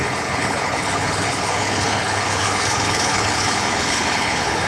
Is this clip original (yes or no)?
no